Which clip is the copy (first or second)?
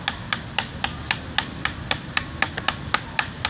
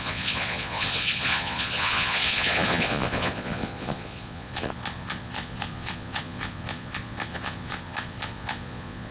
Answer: second